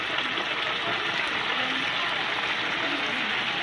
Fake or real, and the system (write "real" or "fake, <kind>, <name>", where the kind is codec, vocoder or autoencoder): real